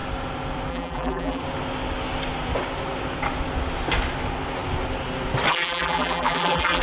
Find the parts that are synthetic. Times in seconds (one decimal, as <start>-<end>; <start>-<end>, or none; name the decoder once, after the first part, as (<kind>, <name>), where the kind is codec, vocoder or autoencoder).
0.7-1.4 (vocoder, BigVGAN v2); 5.5-6.8